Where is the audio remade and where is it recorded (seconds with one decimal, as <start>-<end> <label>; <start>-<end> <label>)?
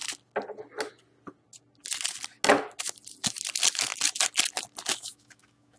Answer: 0.0-4.9 recorded; 4.9-5.8 remade